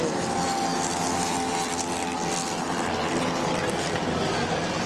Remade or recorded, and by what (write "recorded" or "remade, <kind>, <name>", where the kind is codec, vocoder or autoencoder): recorded